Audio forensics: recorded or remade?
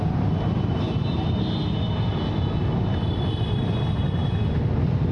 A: recorded